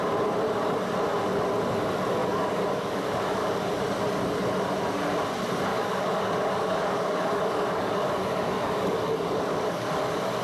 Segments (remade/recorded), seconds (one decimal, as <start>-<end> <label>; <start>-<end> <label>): 0.0-2.2 recorded; 2.2-3.7 remade; 3.7-5.7 recorded; 5.7-9.9 remade; 9.9-10.4 recorded